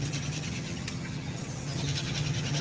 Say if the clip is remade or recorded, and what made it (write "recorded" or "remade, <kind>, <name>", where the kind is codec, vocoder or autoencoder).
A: remade, vocoder, HiFi-GAN